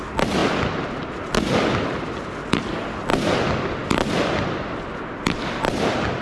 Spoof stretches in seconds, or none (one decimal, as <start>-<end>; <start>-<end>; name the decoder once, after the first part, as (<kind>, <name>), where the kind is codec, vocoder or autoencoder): none